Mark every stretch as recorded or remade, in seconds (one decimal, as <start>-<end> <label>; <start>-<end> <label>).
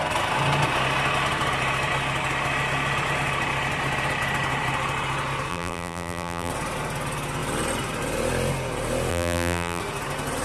0.0-5.5 recorded; 5.5-6.5 remade; 6.5-9.1 recorded; 9.1-9.8 remade; 9.8-10.4 recorded